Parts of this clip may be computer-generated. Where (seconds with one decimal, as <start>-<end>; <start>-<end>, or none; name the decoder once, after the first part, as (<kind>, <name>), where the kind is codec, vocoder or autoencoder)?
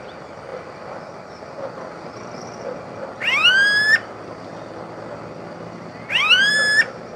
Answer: none